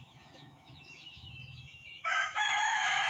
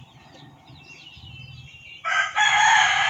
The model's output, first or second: first